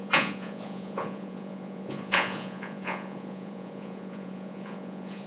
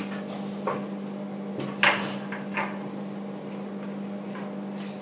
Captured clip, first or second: second